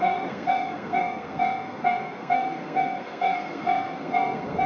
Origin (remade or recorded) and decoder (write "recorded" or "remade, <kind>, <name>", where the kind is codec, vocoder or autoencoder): remade, codec, SNAC